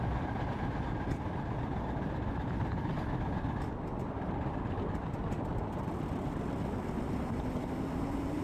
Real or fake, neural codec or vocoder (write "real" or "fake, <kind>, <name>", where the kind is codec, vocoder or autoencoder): real